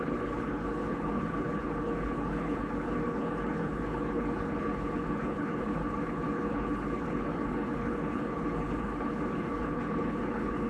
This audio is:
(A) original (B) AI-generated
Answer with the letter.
B